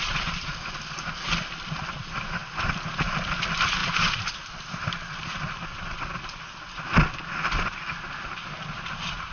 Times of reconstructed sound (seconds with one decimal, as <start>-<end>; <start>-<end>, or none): none